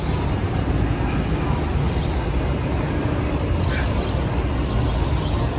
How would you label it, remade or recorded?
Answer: recorded